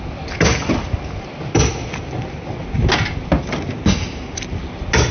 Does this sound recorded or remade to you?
recorded